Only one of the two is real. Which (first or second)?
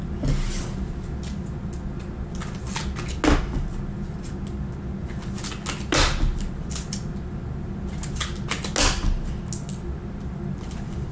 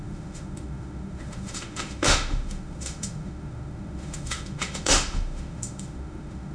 first